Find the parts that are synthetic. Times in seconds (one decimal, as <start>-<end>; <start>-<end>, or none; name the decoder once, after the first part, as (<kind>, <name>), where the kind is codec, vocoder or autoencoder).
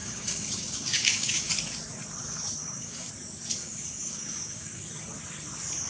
0.0-1.5 (codec, DAC); 2.6-3.1; 3.6-4.9